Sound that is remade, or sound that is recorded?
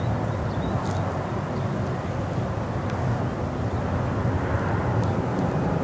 recorded